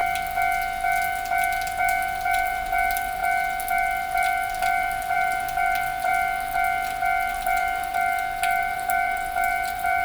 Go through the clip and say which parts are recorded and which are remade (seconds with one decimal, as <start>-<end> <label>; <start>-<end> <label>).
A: 0.0-1.8 recorded; 1.8-3.2 remade; 3.2-4.0 recorded; 4.0-6.1 remade; 6.1-7.3 recorded; 7.3-7.9 remade; 7.9-8.6 recorded; 8.6-10.0 remade